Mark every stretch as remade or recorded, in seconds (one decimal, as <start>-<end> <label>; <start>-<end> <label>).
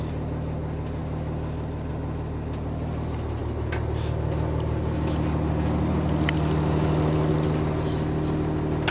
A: 0.0-8.9 recorded